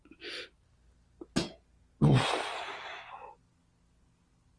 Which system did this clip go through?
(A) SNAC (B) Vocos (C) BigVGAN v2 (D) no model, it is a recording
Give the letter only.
D